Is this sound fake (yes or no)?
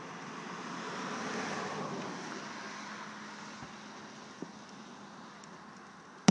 no